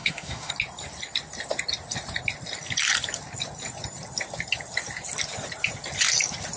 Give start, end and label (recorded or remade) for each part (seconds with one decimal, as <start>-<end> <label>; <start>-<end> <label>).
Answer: 0.0-0.5 remade; 0.5-6.6 recorded